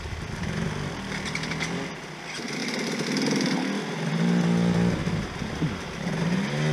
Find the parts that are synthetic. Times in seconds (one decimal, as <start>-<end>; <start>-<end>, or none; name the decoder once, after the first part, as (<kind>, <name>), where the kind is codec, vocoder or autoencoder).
none